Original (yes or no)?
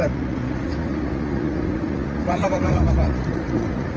no